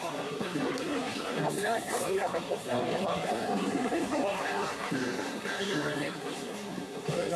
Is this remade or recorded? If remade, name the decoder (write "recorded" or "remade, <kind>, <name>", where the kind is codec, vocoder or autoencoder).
remade, codec, SNAC